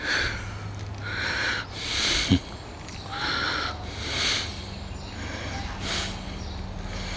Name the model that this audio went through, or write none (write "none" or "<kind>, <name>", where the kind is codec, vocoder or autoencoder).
none